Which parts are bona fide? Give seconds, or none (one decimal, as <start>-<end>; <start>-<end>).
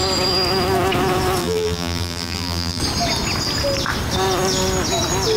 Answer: 0.0-1.4; 2.8-5.4